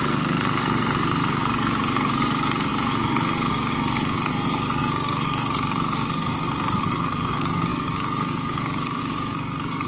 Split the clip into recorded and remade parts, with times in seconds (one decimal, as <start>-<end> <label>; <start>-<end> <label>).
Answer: 0.0-9.9 remade